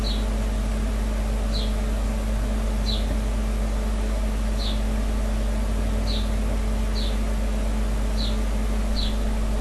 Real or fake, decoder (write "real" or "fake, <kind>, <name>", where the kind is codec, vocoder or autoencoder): real